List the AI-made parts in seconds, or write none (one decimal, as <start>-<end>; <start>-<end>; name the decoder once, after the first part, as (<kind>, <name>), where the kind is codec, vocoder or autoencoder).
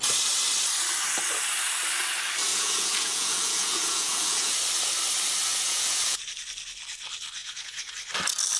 2.5-4.6 (vocoder, Vocos); 5.5-6.2; 7.4-7.9